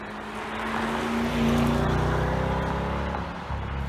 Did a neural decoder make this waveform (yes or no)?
no